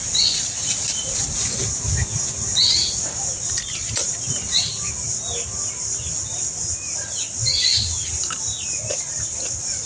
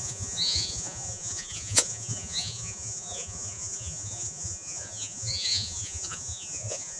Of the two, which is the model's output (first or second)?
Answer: second